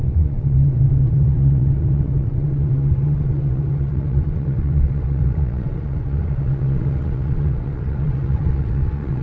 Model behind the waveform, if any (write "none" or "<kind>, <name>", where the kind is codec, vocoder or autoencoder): vocoder, WaveNeXt